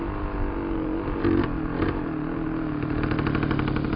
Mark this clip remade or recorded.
recorded